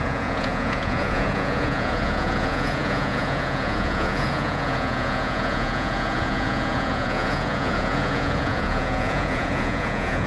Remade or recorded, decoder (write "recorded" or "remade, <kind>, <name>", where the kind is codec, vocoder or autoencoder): remade, vocoder, Vocos